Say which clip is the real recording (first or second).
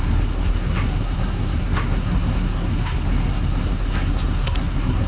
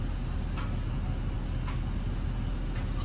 second